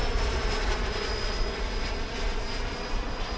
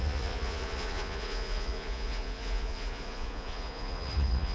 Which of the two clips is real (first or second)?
first